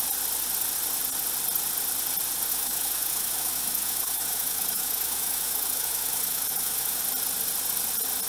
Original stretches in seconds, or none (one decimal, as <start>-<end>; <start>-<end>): 0.0-2.5; 7.0-8.3